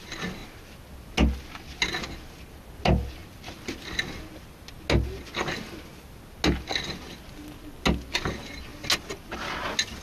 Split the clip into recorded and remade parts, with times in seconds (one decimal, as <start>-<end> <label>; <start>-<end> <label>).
0.0-10.0 recorded